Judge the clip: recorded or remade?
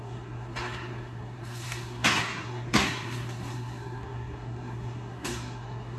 remade